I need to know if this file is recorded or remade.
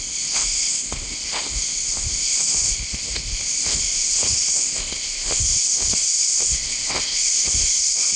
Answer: remade